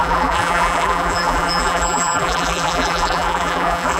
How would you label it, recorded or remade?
remade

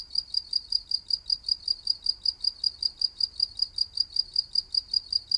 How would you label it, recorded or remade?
recorded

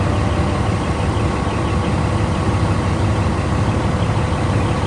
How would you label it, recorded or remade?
recorded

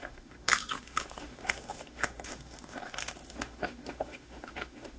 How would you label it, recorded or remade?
remade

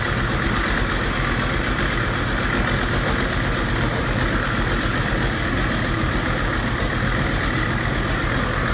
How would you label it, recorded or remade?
recorded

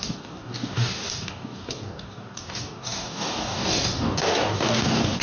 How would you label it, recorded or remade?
remade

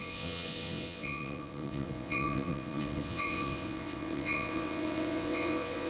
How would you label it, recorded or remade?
remade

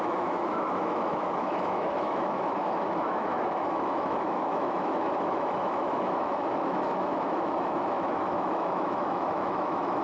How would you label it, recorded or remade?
remade